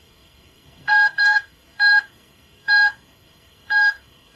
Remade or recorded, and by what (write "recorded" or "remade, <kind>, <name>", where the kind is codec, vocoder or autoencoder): remade, codec, SNAC